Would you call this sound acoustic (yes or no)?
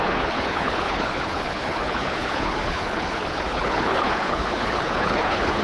no